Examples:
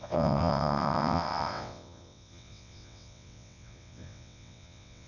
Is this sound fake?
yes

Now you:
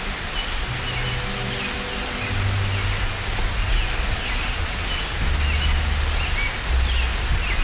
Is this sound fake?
no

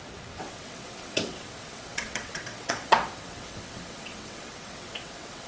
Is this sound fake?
yes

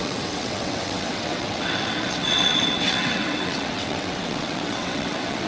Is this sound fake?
yes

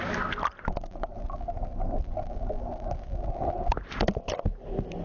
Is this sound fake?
no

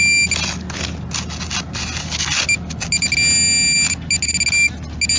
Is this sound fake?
no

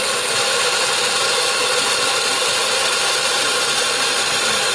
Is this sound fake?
no